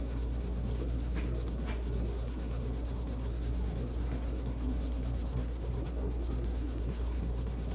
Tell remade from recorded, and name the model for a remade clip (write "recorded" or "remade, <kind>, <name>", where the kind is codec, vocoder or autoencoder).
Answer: remade, codec, SNAC